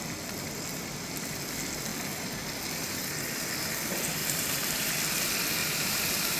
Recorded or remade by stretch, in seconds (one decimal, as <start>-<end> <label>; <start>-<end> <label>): 0.0-4.2 recorded; 4.2-4.9 remade; 4.9-5.6 recorded; 5.6-6.4 remade